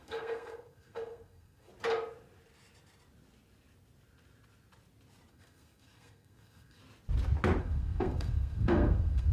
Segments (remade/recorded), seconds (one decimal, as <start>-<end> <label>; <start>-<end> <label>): 0.0-1.7 remade; 1.7-5.3 recorded; 5.3-6.8 remade; 6.8-7.6 recorded; 7.6-9.3 remade